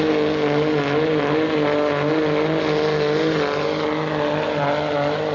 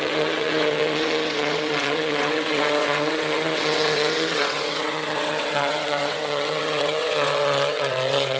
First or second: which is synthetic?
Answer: second